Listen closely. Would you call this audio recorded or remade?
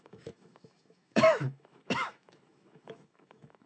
remade